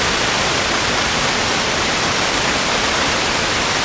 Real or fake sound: fake